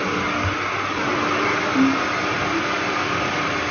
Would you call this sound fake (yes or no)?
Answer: no